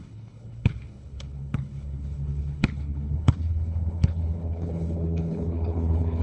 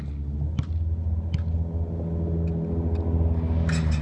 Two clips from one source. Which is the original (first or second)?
second